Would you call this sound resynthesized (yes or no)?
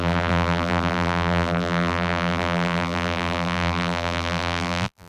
yes